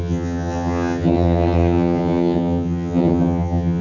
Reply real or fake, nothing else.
fake